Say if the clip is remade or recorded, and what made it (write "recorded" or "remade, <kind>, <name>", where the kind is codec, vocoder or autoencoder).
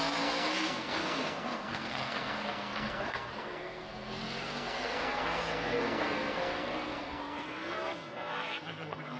remade, codec, SNAC